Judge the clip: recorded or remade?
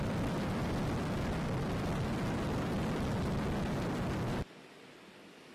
recorded